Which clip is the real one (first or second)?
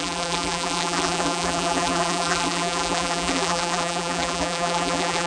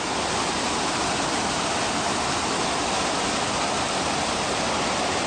second